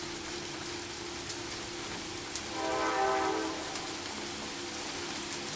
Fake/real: real